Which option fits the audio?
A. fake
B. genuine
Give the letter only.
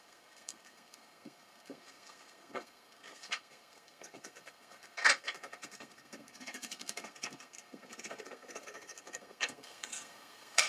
A